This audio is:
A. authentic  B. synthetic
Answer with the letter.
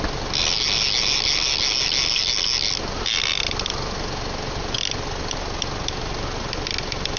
A